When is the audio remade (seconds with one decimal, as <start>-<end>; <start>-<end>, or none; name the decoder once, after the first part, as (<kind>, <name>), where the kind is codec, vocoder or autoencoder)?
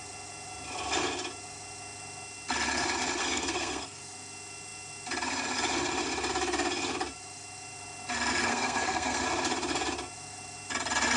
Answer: 3.2-4.0 (codec, SNAC); 8.5-9.2